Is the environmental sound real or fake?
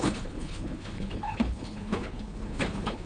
fake